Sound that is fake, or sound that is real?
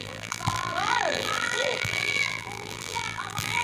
fake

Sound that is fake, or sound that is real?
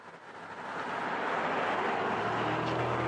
real